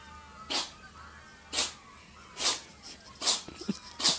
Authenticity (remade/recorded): recorded